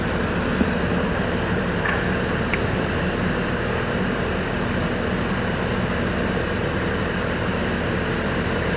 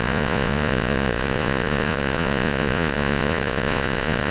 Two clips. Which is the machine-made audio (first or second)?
second